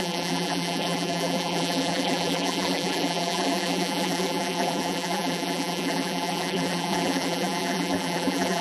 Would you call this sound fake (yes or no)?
yes